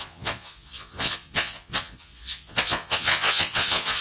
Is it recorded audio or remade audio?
remade